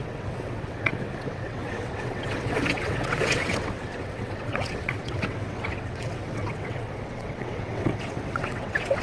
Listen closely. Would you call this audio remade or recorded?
remade